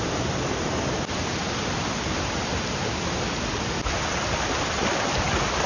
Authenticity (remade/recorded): recorded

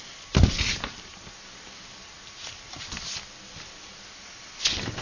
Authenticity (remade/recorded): recorded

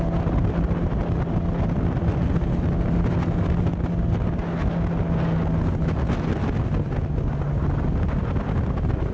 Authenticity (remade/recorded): recorded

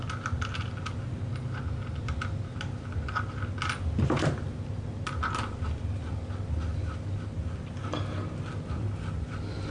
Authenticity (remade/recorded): recorded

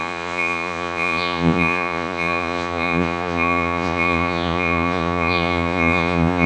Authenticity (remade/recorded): remade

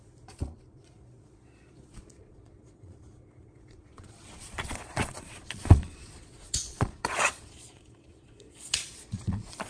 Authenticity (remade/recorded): remade